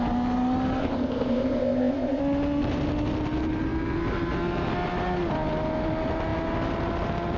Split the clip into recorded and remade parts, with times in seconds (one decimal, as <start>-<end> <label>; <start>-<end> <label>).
0.0-0.8 recorded; 0.8-2.2 remade; 2.2-7.4 recorded